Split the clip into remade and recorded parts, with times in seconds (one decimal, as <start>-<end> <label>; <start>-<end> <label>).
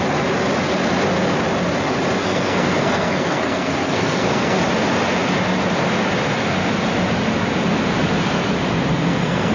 0.0-2.2 recorded; 2.2-4.6 remade; 4.6-8.9 recorded; 8.9-9.5 remade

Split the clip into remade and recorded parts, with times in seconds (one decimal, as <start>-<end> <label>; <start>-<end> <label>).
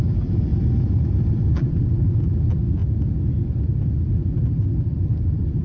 0.0-0.5 remade; 0.5-1.4 recorded; 1.4-2.8 remade; 2.8-4.1 recorded; 4.1-5.6 remade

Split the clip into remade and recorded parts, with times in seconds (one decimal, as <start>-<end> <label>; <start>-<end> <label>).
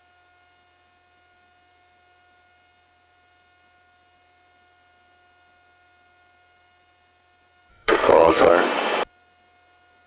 0.0-7.7 recorded; 7.7-8.5 remade; 8.5-10.1 recorded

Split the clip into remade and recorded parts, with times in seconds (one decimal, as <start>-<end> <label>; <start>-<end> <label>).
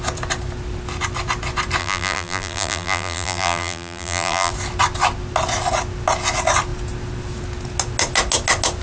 0.0-1.8 recorded; 1.8-4.5 remade; 4.5-8.8 recorded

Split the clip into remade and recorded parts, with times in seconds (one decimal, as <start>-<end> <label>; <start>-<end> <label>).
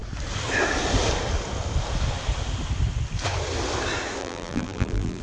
0.0-4.2 recorded; 4.2-5.2 remade